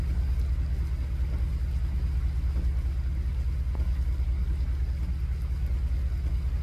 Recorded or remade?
recorded